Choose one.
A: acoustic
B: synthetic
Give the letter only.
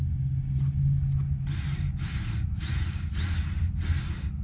A